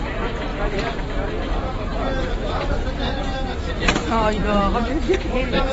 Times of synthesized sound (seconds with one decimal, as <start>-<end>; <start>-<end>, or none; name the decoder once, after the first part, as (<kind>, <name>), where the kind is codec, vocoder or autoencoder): 0.5-1.0 (vocoder, BigVGAN v2)